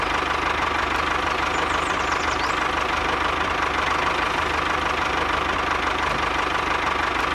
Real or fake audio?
real